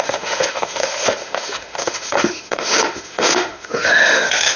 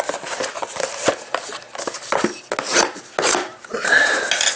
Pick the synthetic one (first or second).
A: first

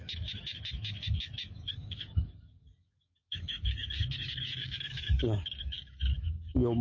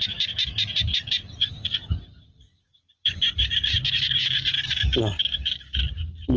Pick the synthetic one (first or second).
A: first